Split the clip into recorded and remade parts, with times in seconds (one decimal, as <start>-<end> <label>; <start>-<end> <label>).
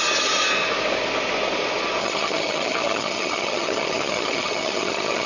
0.0-2.0 recorded; 2.0-5.3 remade